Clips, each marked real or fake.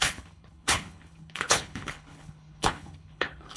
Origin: fake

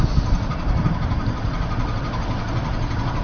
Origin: real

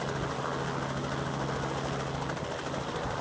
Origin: real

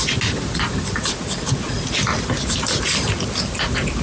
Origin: real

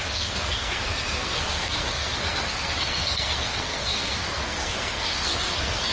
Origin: fake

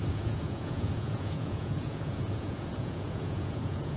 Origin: fake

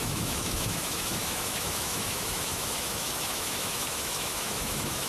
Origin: fake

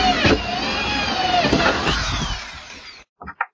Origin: fake